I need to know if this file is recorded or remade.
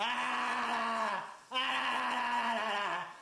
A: recorded